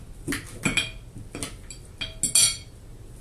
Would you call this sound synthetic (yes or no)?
no